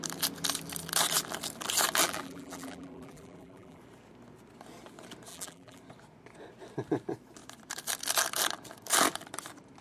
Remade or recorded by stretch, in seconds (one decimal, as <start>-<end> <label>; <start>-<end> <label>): 0.0-2.0 recorded; 2.0-3.8 remade; 3.8-5.3 recorded; 5.3-5.8 remade; 5.8-9.8 recorded